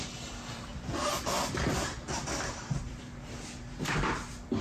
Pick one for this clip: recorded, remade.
remade